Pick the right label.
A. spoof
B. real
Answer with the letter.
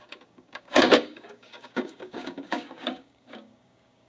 A